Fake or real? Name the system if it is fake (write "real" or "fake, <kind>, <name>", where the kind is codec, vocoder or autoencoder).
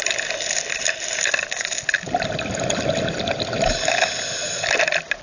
real